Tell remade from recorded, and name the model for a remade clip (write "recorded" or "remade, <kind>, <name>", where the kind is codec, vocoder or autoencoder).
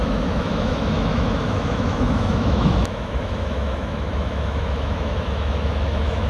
remade, autoencoder, DAC-VAE